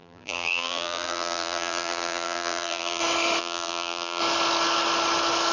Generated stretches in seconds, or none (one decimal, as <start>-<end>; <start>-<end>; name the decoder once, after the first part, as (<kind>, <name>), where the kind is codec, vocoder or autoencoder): 0.0-3.0 (vocoder, BigVGAN v2); 3.4-4.2